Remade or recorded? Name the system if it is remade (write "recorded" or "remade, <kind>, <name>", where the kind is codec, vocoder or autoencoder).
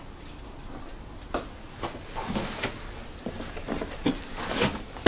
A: recorded